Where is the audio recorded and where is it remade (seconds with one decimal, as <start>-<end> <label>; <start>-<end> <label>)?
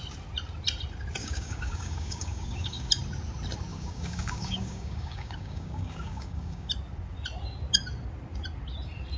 0.0-1.2 recorded; 1.2-2.9 remade; 2.9-3.7 recorded; 3.7-6.7 remade; 6.7-9.2 recorded